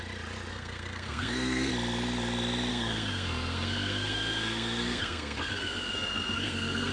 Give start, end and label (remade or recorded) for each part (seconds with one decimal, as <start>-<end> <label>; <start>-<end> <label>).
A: 0.0-0.5 recorded; 0.5-1.7 remade; 1.7-2.7 recorded; 2.7-6.9 remade